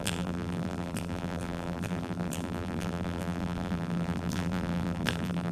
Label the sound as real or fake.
fake